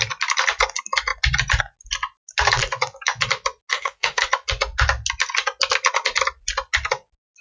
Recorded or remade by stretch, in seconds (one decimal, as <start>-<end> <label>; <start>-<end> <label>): 0.0-3.7 recorded; 3.7-4.2 remade; 4.2-7.4 recorded